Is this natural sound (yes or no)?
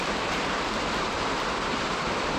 no